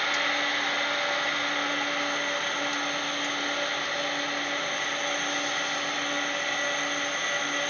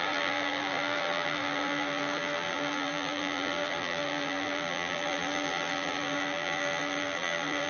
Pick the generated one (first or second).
second